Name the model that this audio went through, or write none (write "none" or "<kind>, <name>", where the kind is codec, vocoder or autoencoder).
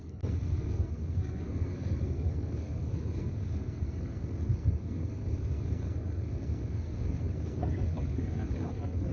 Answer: codec, SNAC